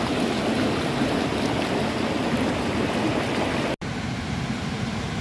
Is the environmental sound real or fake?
real